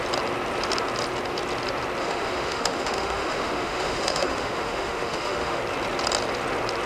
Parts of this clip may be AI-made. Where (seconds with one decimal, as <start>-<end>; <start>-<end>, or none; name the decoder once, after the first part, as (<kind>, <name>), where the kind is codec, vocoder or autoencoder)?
2.0-5.6 (autoencoder, DAC-VAE)